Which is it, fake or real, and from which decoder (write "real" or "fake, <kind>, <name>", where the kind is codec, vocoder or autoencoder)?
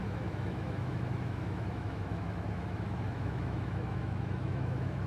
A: fake, autoencoder, DAC-VAE